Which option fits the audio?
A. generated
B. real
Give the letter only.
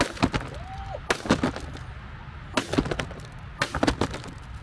B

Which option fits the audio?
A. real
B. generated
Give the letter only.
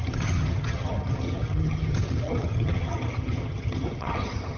B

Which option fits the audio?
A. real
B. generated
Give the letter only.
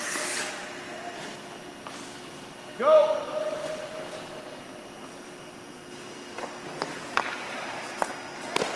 A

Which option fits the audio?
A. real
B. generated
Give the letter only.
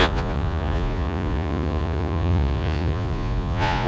B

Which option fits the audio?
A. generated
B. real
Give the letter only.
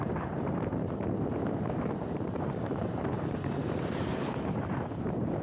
A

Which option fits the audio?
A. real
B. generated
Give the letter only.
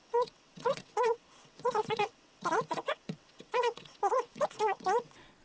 B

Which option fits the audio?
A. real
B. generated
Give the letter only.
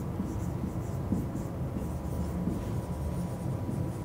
A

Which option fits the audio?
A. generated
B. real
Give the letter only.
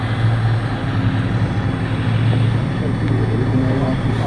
B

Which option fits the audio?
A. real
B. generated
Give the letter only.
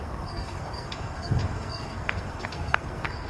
B